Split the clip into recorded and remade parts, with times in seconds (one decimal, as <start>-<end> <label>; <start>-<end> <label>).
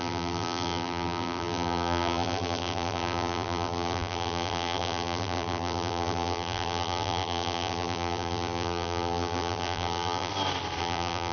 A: 0.0-10.3 remade; 10.3-10.8 recorded; 10.8-11.3 remade